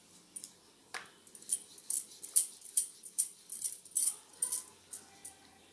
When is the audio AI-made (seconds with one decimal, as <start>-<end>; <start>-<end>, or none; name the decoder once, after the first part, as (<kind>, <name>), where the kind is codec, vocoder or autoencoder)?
0.0-0.8 (vocoder, BigVGAN v2); 1.8-4.3; 5.3-5.7